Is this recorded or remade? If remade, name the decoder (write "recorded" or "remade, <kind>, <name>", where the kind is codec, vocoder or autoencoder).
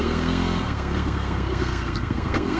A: remade, codec, SNAC